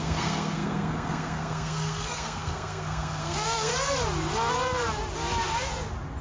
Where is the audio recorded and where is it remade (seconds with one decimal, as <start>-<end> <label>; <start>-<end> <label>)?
0.0-3.7 remade; 3.7-6.2 recorded